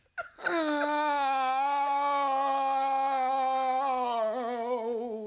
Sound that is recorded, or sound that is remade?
recorded